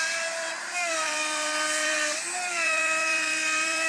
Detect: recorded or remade remade